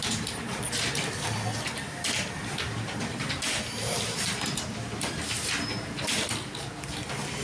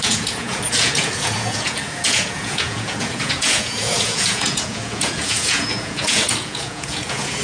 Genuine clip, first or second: first